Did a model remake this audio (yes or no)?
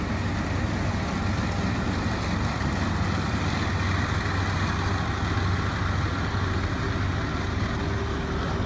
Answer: no